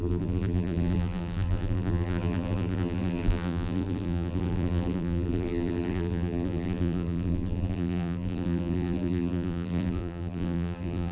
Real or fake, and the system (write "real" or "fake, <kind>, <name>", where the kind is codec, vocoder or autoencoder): fake, vocoder, BigVGAN v2